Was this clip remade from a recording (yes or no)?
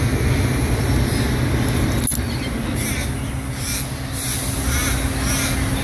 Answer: no